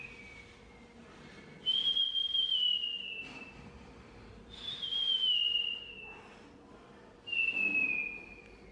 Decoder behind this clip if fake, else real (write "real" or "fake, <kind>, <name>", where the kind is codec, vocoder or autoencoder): real